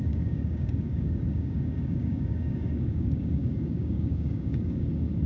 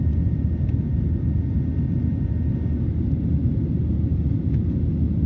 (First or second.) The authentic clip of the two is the second